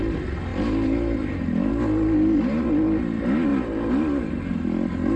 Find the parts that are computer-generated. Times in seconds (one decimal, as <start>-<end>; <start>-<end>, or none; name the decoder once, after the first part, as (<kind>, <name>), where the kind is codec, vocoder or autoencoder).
none